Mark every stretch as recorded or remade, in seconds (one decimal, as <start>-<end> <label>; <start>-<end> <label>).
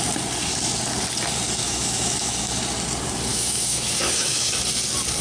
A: 0.0-1.6 recorded; 1.6-2.6 remade; 2.6-3.3 recorded; 3.3-4.5 remade; 4.5-5.2 recorded